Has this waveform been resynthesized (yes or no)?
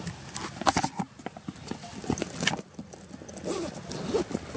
no